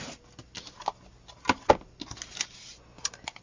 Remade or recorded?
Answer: recorded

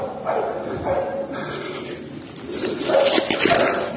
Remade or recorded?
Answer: recorded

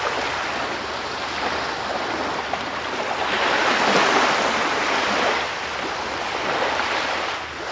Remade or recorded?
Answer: recorded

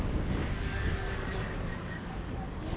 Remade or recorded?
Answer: remade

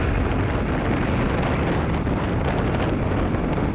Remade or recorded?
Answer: recorded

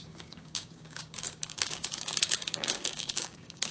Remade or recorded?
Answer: remade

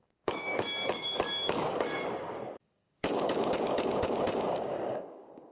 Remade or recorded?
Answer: remade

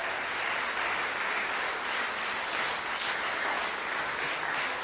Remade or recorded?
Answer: recorded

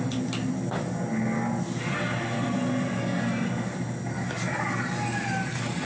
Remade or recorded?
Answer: recorded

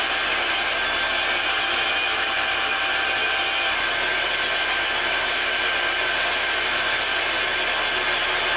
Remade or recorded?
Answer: recorded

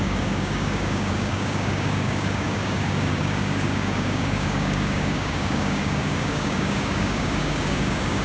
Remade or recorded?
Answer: remade